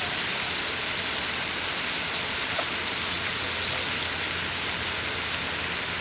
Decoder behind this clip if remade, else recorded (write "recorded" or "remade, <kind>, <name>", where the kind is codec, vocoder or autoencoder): recorded